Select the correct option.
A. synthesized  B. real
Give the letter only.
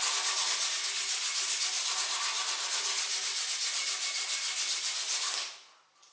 B